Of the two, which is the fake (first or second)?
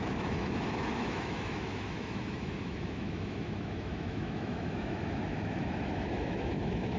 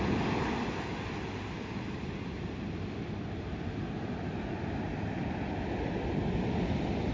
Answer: first